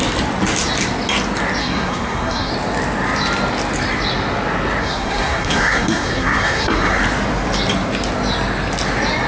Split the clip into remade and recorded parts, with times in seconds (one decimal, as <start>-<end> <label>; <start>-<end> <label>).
0.0-1.6 recorded; 1.6-2.5 remade; 2.5-4.8 recorded; 4.8-7.0 remade; 7.0-9.3 recorded

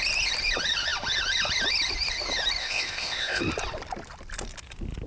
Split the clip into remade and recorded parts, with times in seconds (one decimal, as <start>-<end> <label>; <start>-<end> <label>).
0.0-2.6 recorded; 2.6-3.4 remade; 3.4-5.1 recorded

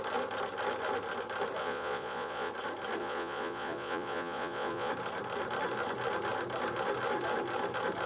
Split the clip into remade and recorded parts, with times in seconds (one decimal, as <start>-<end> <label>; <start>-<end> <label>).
0.0-1.6 recorded; 1.6-2.5 remade; 2.5-3.0 recorded; 3.0-4.9 remade; 4.9-8.1 recorded

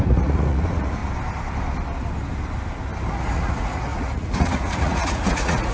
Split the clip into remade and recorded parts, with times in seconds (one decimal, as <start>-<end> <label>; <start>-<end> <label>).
0.0-1.0 remade; 1.0-3.1 recorded; 3.1-5.7 remade

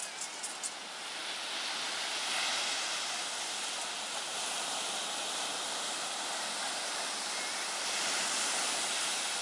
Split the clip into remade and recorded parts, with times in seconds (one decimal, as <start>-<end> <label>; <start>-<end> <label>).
0.0-9.4 recorded

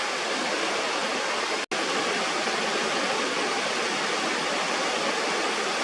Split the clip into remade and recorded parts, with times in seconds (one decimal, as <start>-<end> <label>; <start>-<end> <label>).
0.0-5.8 recorded